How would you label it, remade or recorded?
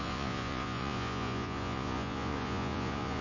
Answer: remade